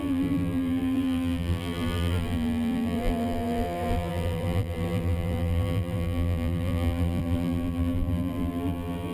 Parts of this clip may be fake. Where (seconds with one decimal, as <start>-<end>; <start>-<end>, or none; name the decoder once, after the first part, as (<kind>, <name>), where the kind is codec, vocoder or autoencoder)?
0.0-9.1 (vocoder, BigVGAN v2)